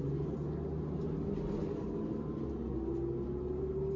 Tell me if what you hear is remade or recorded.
recorded